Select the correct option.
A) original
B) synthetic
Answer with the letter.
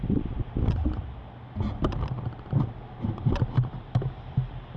A